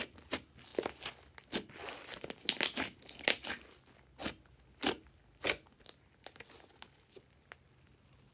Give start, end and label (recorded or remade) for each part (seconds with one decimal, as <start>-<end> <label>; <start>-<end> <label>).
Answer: 0.0-8.3 recorded